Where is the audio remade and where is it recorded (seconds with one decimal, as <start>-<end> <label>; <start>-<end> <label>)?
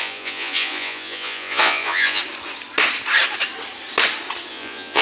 0.0-2.2 remade; 2.2-4.5 recorded; 4.5-5.0 remade